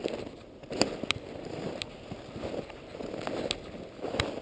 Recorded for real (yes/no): yes